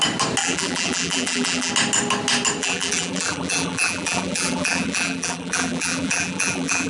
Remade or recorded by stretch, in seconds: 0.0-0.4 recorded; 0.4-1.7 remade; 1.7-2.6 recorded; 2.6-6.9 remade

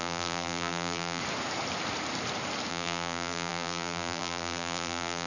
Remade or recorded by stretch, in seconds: 0.0-1.2 remade; 1.2-2.7 recorded; 2.7-5.3 remade

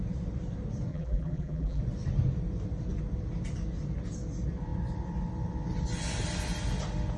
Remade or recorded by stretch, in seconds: 0.0-0.9 recorded; 0.9-1.8 remade; 1.8-7.2 recorded

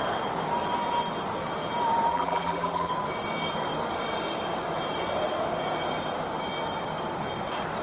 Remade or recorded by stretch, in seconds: 0.0-2.1 recorded; 2.1-2.9 remade; 2.9-7.8 recorded